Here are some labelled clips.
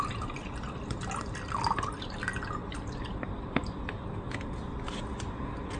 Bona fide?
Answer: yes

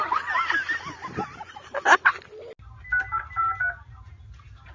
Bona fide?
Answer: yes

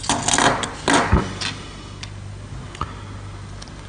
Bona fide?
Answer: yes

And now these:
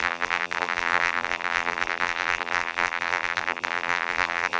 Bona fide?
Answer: no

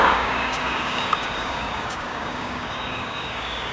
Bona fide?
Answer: no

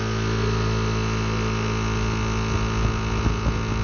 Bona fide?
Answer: yes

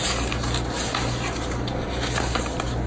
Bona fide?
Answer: yes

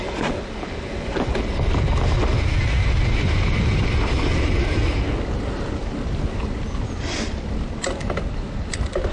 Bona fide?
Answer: yes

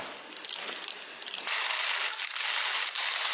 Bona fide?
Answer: yes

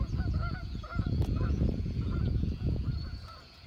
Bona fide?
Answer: no